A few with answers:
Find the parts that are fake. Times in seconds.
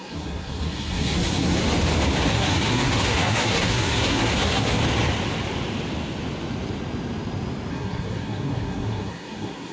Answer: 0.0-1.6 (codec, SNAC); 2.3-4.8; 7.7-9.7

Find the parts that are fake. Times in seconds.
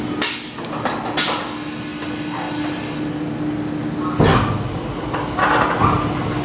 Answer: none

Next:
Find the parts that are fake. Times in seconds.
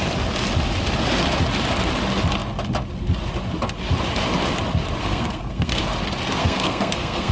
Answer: 5.0-5.8 (codec, SNAC); 6.4-7.3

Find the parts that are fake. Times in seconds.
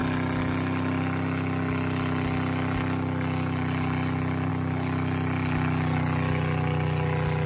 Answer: none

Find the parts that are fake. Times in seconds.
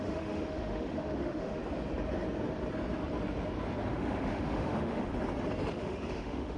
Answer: 0.0-1.6 (autoencoder, DAC-VAE); 3.9-5.1; 5.7-6.6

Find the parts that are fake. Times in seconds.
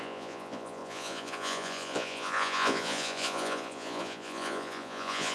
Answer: 0.0-5.3 (vocoder, Vocos)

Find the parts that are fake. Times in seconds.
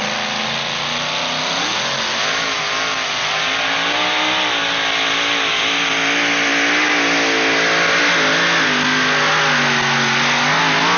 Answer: none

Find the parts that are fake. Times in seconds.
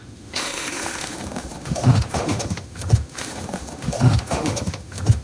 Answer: 0.0-5.2 (autoencoder, DAC-VAE)